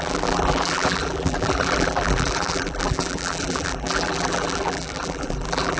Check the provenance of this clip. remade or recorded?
remade